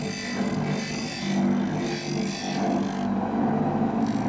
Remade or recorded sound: recorded